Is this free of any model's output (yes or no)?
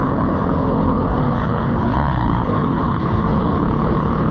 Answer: no